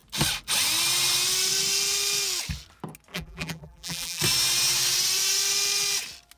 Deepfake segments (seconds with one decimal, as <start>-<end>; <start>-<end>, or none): 3.1-4.2